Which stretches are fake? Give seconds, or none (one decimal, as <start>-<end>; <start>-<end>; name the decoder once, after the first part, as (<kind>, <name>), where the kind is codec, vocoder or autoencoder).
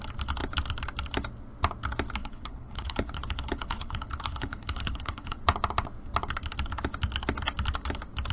2.2-5.4 (codec, HILCodec)